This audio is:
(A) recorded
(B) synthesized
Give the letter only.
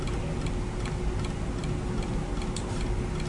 A